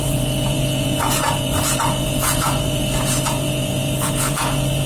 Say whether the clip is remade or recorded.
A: remade